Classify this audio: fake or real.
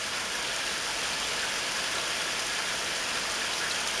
real